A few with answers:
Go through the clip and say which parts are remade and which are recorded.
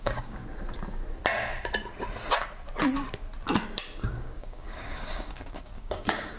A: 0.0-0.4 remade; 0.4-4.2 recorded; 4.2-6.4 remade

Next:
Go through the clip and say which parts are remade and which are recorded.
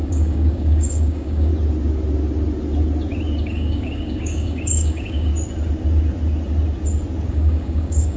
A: 0.0-1.5 remade; 1.5-3.4 recorded; 3.4-5.3 remade; 5.3-7.3 recorded; 7.3-8.2 remade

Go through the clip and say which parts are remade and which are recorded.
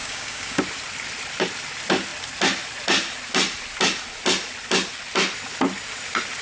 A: 0.0-0.6 remade; 0.6-6.4 recorded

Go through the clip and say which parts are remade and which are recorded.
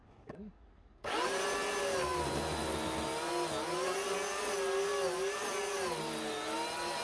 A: 0.0-1.1 remade; 1.1-7.0 recorded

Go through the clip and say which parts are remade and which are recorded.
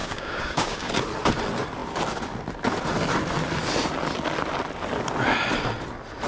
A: 0.0-1.0 remade; 1.0-6.3 recorded